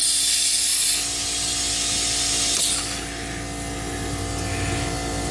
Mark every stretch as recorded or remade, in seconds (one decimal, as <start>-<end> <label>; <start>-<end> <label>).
0.0-5.3 recorded